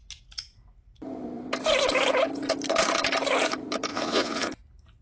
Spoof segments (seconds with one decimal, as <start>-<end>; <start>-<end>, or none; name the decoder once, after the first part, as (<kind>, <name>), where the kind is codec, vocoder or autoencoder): 3.9-4.5 (vocoder, Vocos)